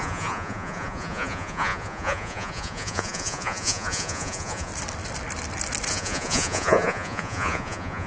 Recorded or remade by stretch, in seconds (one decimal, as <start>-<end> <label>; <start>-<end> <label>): 0.0-4.7 remade; 4.7-5.9 recorded; 5.9-8.1 remade